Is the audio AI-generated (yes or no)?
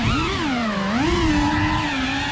no